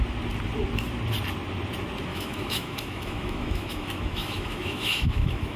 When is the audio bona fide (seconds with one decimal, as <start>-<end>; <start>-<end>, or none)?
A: 0.0-2.1